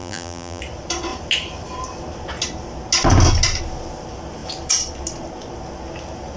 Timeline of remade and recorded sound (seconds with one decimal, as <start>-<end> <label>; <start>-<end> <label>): 0.0-0.6 remade; 0.6-6.4 recorded